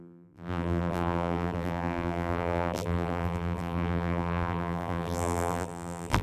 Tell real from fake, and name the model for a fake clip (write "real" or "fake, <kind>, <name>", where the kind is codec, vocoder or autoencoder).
fake, vocoder, BigVGAN v2